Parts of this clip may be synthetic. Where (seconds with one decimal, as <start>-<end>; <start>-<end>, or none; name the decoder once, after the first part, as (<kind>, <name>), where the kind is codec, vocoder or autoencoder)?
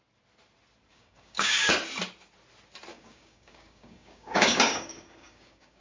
0.9-1.7 (codec, DAC); 2.9-5.8